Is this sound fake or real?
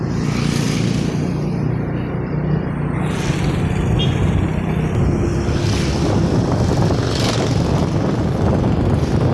real